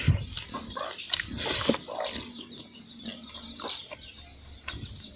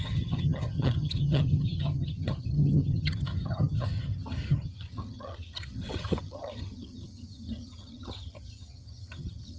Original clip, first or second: first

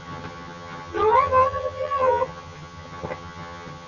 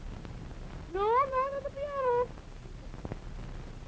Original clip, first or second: second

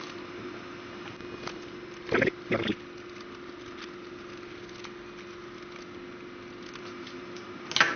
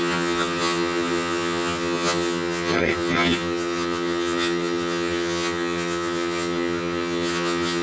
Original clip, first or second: first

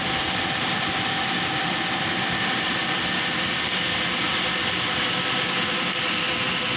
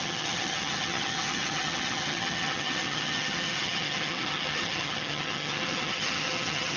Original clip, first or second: first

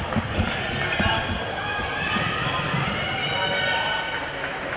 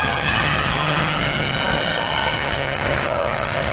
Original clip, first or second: first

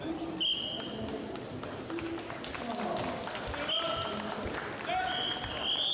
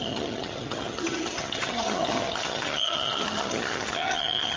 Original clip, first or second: first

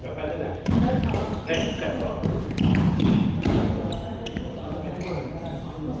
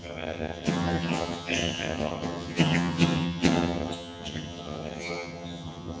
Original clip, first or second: first